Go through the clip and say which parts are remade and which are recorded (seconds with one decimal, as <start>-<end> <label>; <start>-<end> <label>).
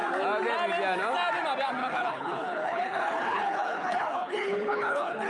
0.0-1.8 recorded; 1.8-5.3 remade